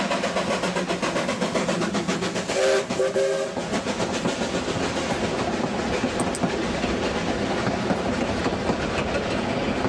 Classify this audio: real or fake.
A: real